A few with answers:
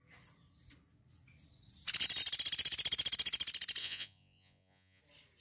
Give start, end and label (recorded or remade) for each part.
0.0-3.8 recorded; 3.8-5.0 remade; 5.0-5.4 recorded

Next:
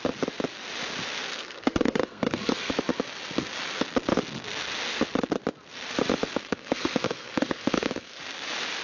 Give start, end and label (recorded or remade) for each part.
0.0-1.3 recorded; 1.3-2.7 remade; 2.7-6.4 recorded; 6.4-8.2 remade; 8.2-8.8 recorded

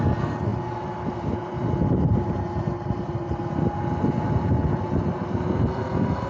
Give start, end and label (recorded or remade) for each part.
0.0-6.3 recorded

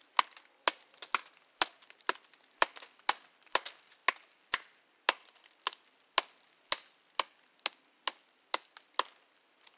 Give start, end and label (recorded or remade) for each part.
0.0-9.8 recorded

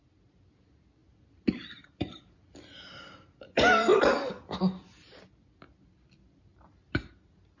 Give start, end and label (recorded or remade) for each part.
0.0-6.5 recorded; 6.5-7.6 remade

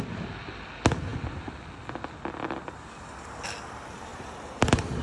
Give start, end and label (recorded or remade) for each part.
0.0-4.1 recorded; 4.1-5.0 remade